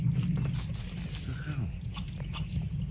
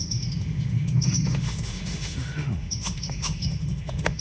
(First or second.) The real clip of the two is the first